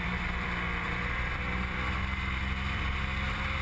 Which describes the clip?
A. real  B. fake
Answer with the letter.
B